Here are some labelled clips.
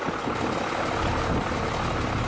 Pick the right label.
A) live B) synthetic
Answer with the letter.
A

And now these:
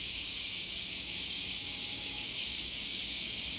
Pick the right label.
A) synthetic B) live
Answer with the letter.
A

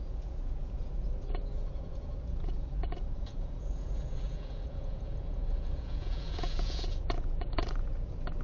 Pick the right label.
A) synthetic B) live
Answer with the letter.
A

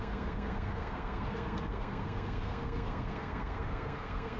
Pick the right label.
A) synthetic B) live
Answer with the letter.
A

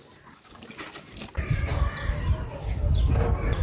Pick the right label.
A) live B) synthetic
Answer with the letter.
A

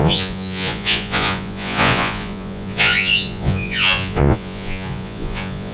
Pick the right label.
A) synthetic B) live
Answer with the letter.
A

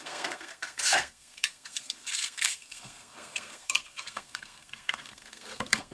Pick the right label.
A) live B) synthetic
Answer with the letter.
B